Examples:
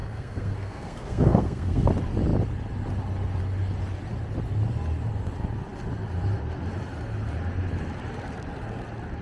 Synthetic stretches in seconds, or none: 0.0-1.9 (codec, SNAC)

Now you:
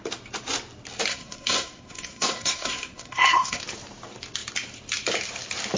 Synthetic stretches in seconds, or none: 1.1-3.6 (codec, SNAC)

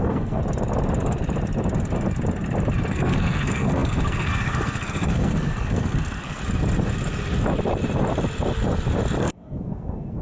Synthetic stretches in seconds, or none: 0.0-0.4 (codec, SNAC); 2.9-6.4; 9.2-10.2

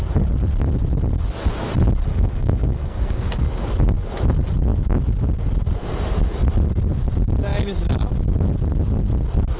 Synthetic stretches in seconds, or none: 2.1-3.2 (codec, SNAC)

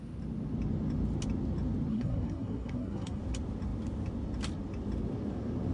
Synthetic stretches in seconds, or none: 1.9-3.2 (codec, SNAC)

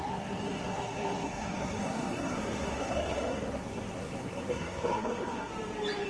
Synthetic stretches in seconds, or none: 0.0-5.5 (codec, SNAC)